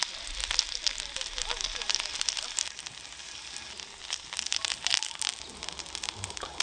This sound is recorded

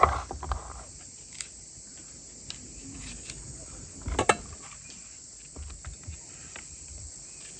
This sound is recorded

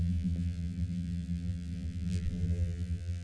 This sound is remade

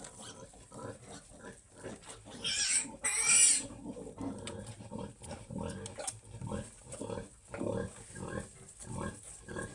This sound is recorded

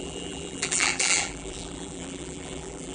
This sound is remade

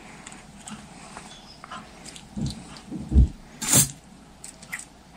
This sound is remade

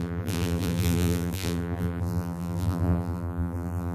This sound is remade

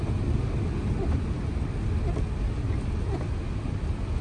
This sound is recorded